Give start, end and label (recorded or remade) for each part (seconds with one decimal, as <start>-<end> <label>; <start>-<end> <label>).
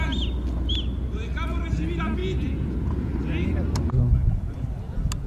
0.0-2.2 recorded; 2.2-3.1 remade; 3.1-5.3 recorded